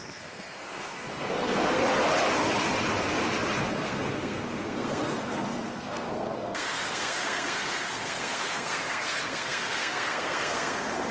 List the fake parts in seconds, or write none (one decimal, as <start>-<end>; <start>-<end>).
0.0-1.8; 3.7-11.1

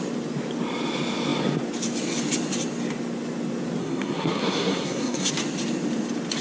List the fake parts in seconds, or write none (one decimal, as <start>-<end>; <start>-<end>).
3.8-5.3

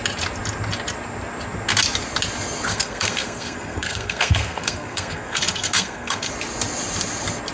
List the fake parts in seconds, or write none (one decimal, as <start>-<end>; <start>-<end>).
2.7-6.3